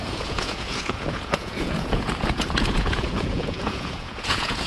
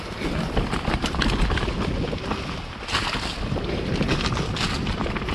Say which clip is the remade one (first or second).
first